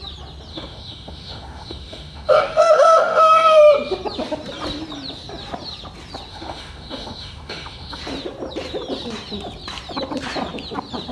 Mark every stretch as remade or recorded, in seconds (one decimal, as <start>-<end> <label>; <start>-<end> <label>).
0.0-0.5 recorded; 0.5-3.6 remade; 3.6-6.3 recorded; 6.3-8.0 remade; 8.0-11.1 recorded